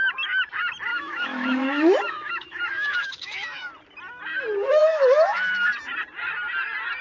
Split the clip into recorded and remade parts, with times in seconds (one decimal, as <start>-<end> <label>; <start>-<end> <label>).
0.0-0.9 recorded; 0.9-3.7 remade; 3.7-4.8 recorded; 4.8-5.7 remade; 5.7-7.0 recorded